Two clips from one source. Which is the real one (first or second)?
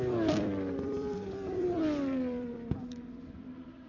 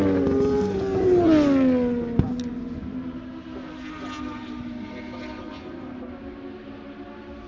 second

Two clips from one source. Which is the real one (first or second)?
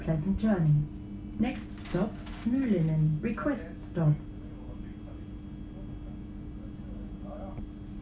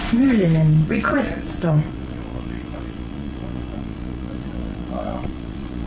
first